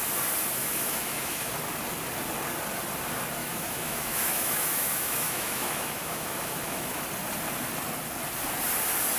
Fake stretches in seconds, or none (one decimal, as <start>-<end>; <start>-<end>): 0.6-1.5; 3.4-7.0

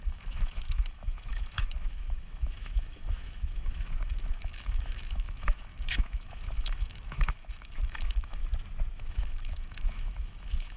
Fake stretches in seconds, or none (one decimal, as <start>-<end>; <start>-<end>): 0.0-8.4; 9.0-10.8

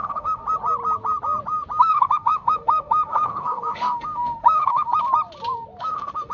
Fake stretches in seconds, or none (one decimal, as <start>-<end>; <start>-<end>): 0.0-0.4; 1.8-4.9; 5.8-6.3

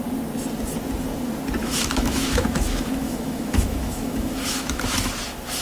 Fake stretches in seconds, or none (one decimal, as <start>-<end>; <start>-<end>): 1.6-4.8

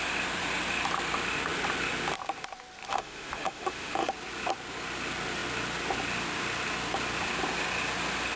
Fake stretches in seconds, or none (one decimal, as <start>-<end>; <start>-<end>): 2.9-4.1

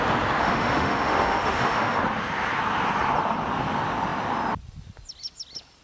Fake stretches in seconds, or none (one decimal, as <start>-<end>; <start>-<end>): 0.4-2.0

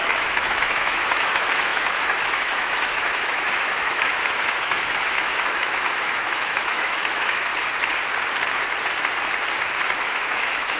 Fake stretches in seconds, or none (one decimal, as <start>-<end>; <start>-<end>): 0.0-7.5; 10.0-10.8